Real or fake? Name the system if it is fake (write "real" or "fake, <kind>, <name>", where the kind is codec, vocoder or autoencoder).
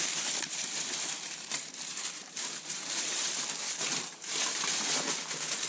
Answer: fake, vocoder, BigVGAN v2